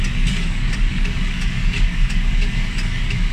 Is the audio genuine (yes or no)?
no